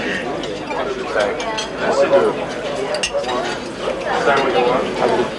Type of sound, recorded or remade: recorded